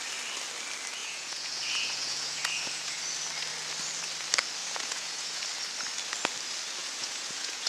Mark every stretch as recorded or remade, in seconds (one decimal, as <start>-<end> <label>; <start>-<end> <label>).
0.0-1.0 recorded; 1.0-3.0 remade; 3.0-4.6 recorded; 4.6-5.4 remade; 5.4-6.8 recorded; 6.8-7.7 remade